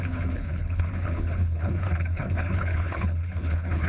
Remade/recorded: remade